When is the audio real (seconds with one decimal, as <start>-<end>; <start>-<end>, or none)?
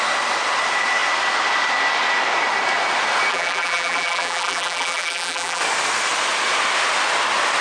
0.0-3.3; 5.6-7.6